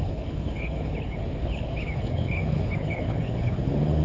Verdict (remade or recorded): remade